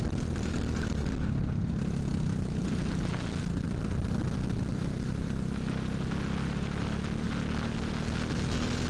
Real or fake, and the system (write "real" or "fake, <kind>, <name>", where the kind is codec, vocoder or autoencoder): real